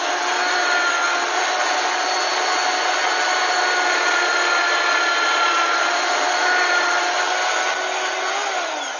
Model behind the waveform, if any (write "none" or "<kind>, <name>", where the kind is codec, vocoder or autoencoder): none